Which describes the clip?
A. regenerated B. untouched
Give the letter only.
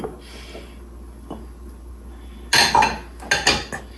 B